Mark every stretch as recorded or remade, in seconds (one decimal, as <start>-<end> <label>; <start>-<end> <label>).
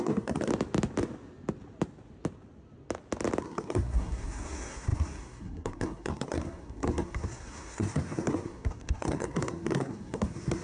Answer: 0.0-0.5 remade; 0.5-3.4 recorded; 3.4-10.6 remade